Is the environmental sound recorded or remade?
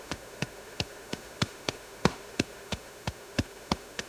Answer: remade